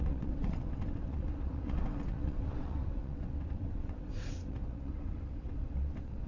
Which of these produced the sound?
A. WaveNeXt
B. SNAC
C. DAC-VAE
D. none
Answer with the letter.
A